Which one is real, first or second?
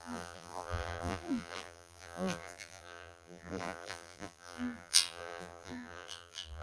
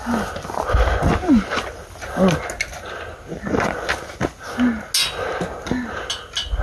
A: second